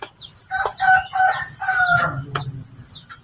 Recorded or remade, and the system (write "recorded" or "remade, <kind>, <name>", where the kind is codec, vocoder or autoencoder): remade, vocoder, Vocos